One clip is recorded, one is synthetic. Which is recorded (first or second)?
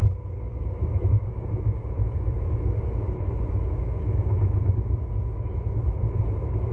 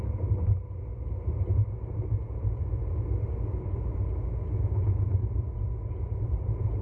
second